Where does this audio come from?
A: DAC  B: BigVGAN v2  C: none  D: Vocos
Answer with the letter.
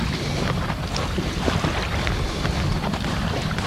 C